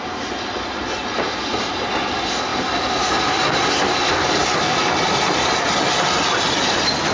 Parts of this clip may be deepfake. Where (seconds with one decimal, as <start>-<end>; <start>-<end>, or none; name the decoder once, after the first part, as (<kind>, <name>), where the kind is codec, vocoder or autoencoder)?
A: none